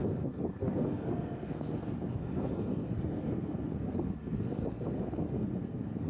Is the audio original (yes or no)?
no